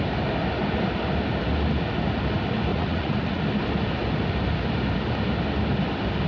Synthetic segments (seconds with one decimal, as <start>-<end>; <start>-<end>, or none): 2.7-3.4